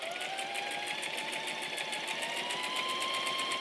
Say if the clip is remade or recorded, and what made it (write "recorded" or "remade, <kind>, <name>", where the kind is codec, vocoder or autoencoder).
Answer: recorded